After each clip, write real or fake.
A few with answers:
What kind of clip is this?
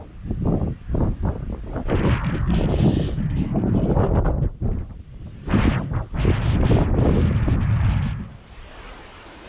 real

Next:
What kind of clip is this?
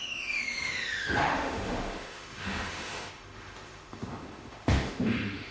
fake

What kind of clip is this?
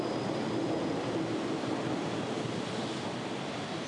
real